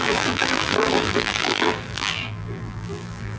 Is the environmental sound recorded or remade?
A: remade